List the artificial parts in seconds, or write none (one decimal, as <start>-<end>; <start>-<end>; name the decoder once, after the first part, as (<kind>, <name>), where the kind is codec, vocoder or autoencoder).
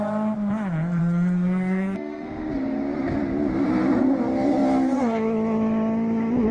1.0-2.5 (codec, SNAC)